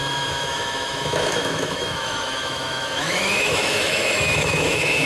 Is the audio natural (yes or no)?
no